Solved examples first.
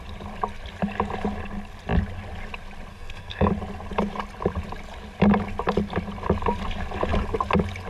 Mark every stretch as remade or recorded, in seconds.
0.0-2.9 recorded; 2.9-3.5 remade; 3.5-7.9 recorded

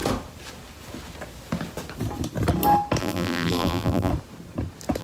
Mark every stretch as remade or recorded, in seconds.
0.0-3.0 recorded; 3.0-4.1 remade; 4.1-5.0 recorded

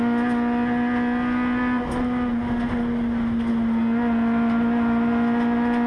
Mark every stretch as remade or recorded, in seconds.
0.0-5.9 recorded